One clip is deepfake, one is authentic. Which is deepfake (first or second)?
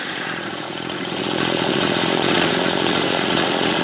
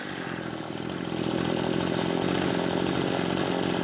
first